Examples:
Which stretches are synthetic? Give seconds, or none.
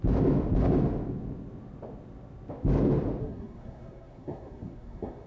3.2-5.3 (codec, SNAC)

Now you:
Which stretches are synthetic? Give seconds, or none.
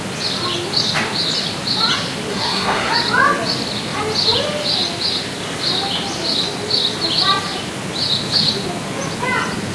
2.3-2.9 (codec, SNAC)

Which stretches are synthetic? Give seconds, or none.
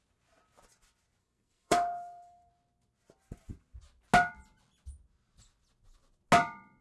1.2-2.5 (codec, SNAC)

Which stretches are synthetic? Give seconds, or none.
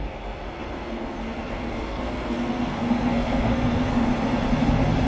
0.0-4.1 (codec, SNAC)